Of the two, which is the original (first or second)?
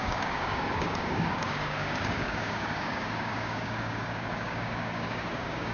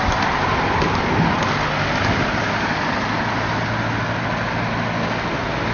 second